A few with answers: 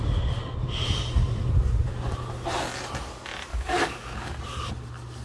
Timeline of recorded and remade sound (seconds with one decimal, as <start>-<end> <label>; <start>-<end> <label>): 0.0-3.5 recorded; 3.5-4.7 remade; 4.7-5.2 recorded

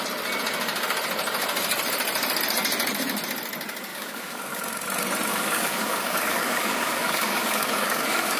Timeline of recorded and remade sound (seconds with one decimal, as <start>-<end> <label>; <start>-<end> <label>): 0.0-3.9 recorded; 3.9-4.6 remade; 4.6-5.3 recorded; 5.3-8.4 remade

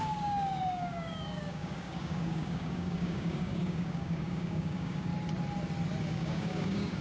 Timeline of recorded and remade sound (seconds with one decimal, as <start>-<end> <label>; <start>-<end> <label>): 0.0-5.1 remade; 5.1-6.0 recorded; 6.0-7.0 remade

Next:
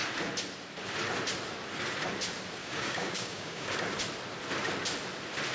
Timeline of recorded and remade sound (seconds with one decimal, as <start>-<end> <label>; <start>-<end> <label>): 0.0-2.6 recorded; 2.6-3.7 remade; 3.7-5.5 recorded